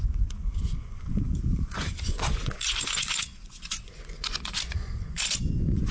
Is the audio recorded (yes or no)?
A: no